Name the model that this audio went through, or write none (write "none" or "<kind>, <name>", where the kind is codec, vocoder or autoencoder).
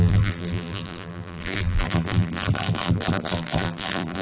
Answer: vocoder, BigVGAN v2